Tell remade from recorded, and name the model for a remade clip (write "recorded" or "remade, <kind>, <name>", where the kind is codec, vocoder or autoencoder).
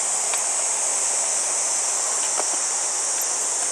recorded